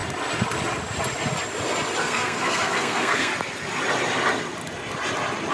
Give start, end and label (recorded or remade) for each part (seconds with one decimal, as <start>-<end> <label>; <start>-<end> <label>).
0.0-2.0 recorded; 2.0-3.3 remade; 3.3-5.5 recorded